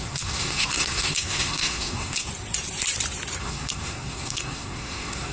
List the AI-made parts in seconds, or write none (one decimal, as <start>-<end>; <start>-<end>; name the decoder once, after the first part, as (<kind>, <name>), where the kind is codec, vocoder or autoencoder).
0.0-2.3 (codec, SNAC); 3.4-5.3